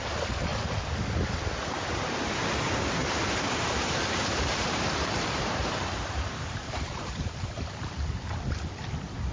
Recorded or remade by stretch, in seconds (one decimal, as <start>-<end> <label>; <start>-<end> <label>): 0.0-3.0 recorded; 3.0-7.5 remade; 7.5-9.3 recorded